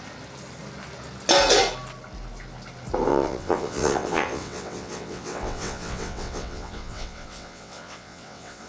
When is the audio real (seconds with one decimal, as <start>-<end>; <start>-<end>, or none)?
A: 0.0-3.1